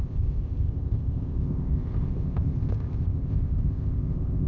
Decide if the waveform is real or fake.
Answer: fake